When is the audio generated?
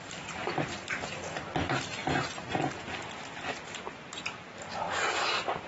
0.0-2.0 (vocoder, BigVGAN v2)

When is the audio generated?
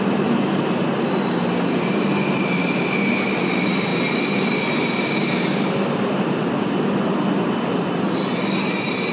none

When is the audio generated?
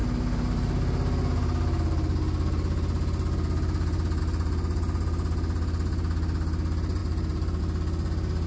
7.0-7.6 (vocoder, BigVGAN v2)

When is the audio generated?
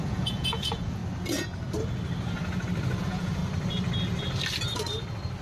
0.0-1.0 (vocoder, Vocos); 3.0-3.4